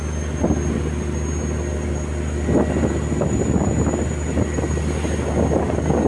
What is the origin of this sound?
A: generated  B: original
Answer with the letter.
B